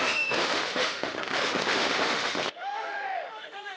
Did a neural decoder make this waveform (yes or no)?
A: yes